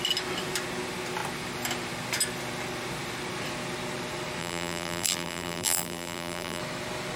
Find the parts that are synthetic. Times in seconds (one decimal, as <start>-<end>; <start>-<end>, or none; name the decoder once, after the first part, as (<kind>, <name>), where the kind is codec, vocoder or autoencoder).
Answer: 4.4-6.6 (vocoder, BigVGAN v2)